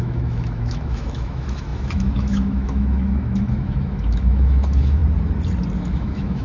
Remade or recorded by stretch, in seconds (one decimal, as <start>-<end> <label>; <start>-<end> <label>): 0.0-5.0 remade; 5.0-5.8 recorded; 5.8-6.4 remade